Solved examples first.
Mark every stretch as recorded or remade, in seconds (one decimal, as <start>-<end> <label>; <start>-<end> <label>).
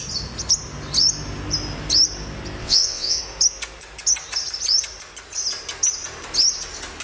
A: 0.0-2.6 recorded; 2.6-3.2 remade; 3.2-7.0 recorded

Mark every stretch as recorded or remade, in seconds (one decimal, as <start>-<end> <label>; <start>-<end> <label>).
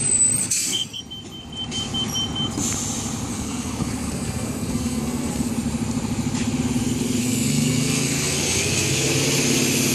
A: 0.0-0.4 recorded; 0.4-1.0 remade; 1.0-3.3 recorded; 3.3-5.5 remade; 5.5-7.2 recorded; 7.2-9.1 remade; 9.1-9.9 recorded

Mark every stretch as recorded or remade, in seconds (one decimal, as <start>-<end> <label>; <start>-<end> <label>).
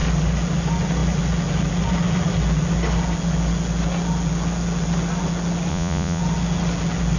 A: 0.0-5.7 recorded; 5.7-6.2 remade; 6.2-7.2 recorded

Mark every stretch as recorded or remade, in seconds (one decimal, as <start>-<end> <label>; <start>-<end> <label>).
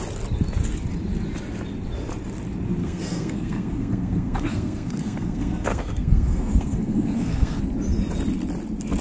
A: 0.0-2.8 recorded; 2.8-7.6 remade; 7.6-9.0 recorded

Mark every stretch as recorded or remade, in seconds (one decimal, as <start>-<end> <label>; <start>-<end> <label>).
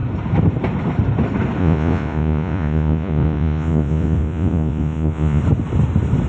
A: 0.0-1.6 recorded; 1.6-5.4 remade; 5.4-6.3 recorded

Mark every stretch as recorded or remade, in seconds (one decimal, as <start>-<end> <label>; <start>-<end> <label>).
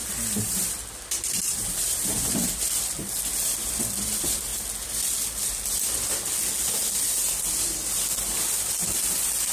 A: 0.0-4.5 remade; 4.5-7.0 recorded; 7.0-9.5 remade